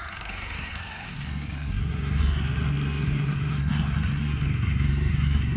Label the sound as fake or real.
fake